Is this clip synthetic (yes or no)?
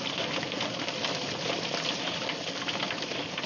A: no